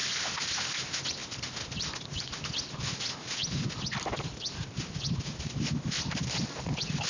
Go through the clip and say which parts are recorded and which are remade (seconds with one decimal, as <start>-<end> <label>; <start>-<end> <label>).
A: 0.0-7.1 recorded